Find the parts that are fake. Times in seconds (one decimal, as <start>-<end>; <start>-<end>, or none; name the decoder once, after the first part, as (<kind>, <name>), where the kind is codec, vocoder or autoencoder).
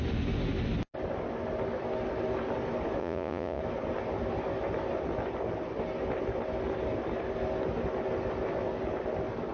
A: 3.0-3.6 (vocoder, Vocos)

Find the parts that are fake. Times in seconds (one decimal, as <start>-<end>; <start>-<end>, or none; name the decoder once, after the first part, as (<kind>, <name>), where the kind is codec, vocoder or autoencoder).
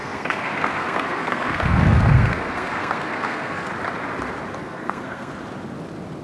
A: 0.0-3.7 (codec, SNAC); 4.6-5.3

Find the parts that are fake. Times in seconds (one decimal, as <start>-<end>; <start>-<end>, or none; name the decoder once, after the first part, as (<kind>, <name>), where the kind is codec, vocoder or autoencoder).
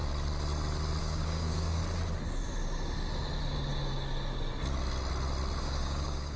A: 1.0-1.8 (codec, DAC); 5.6-6.4